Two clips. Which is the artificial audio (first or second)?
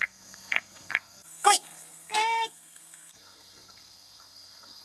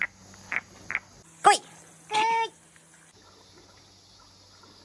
first